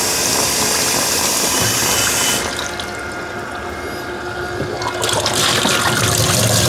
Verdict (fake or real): real